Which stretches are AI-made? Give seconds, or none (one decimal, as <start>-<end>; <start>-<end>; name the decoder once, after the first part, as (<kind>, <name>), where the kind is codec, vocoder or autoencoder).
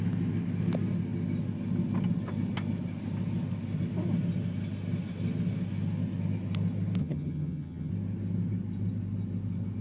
7.0-7.9 (vocoder, HiFi-GAN)